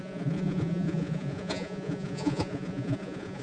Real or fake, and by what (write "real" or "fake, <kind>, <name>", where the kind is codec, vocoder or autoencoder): fake, vocoder, Vocos